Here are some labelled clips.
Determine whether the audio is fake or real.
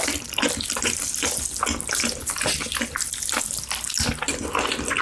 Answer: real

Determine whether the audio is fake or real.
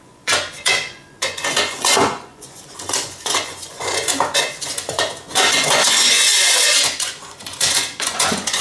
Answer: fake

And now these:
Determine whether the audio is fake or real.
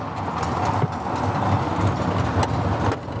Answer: real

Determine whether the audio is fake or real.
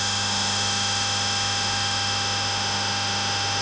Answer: fake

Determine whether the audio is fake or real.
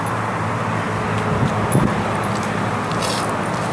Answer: real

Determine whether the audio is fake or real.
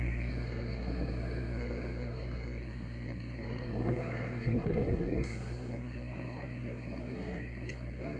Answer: fake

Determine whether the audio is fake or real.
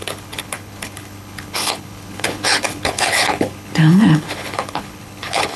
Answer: fake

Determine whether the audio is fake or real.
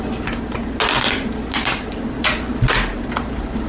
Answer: real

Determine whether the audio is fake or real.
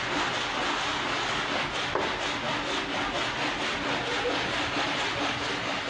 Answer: real